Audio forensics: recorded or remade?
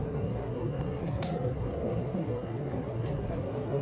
remade